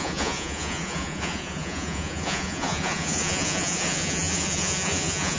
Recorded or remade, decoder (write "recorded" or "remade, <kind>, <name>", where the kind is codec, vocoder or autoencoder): remade, vocoder, Vocos